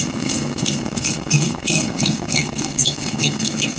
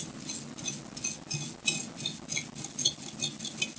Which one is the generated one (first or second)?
first